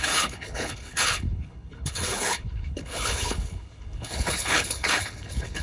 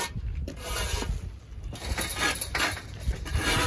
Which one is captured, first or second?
second